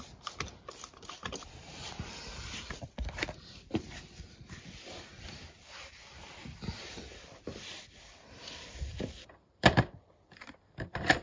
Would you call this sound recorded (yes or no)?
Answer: no